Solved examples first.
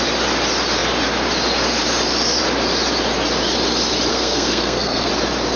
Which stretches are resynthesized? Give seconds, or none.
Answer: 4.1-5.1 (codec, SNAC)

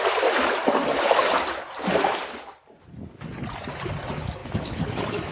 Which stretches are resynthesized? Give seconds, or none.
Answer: 4.4-5.3 (autoencoder, DAC-VAE)